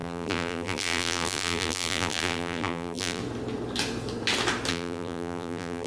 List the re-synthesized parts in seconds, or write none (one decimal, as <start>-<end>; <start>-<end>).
0.0-3.2; 4.7-5.9